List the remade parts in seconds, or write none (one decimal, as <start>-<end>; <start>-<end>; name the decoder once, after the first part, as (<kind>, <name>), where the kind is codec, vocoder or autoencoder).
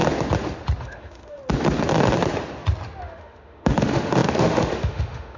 0.8-1.4 (autoencoder, DAC-VAE); 3.0-5.4